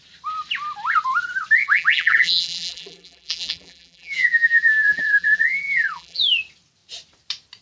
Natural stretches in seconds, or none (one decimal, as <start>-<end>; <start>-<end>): 0.0-1.6; 6.2-7.6